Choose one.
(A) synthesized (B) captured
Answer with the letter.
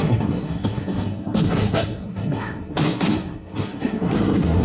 A